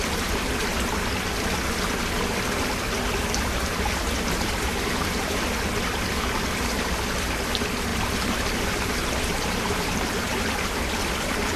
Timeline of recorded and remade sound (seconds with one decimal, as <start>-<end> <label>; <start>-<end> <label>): 0.0-11.6 recorded